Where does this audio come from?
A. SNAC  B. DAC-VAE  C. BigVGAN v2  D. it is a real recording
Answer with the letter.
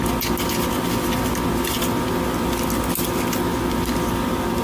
D